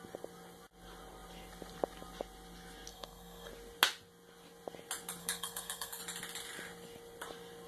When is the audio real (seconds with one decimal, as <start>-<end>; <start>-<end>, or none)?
0.0-2.9; 3.5-5.2; 6.0-7.7